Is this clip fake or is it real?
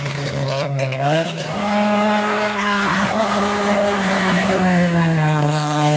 fake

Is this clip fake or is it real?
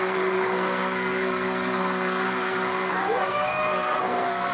fake